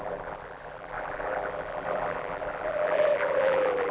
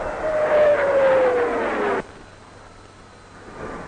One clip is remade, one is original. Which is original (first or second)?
second